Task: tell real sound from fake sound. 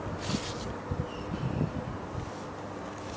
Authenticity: real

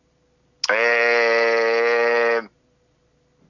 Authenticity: real